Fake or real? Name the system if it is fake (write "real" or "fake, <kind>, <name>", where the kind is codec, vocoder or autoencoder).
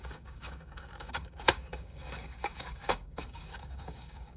fake, codec, DAC